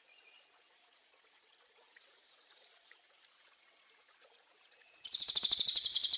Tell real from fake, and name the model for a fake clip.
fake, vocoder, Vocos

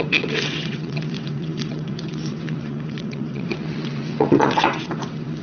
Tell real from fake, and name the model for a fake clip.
fake, vocoder, WaveNeXt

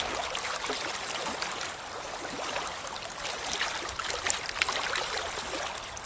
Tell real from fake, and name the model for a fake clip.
real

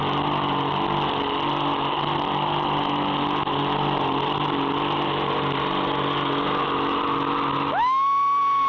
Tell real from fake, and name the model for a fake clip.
real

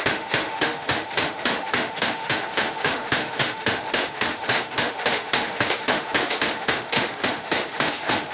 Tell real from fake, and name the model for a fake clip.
fake, autoencoder, DAC-VAE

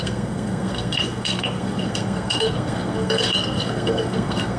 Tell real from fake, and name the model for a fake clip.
fake, codec, SNAC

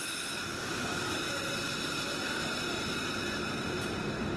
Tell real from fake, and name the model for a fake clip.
real